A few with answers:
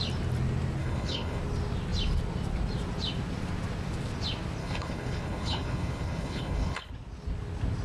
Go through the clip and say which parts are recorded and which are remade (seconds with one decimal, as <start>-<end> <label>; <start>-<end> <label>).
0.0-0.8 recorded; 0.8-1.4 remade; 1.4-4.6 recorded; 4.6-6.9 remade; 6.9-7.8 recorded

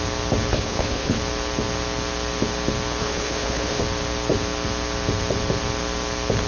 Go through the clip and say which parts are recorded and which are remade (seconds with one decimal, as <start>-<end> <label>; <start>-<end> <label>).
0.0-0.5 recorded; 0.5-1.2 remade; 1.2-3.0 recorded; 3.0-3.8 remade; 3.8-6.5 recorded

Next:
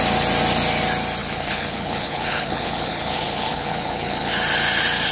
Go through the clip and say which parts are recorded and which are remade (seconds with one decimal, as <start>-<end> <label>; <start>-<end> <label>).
0.0-1.2 recorded; 1.2-4.3 remade; 4.3-5.1 recorded

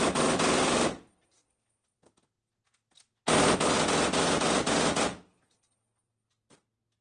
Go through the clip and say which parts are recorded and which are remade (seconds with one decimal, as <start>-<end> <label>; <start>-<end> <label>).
0.0-7.0 recorded

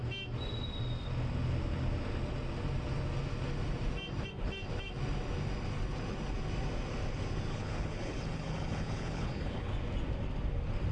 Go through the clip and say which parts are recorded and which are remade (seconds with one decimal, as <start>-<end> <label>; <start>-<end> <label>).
0.0-7.5 recorded; 7.5-9.7 remade; 9.7-10.9 recorded

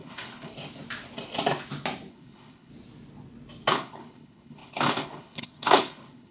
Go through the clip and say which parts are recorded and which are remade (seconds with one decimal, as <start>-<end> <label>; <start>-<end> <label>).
0.0-0.5 remade; 0.5-2.1 recorded; 2.1-2.7 remade; 2.7-3.7 recorded; 3.7-6.3 remade